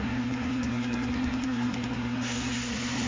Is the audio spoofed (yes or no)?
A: yes